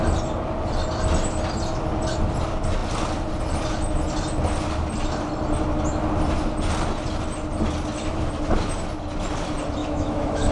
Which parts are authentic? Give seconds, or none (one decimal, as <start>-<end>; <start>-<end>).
0.0-9.8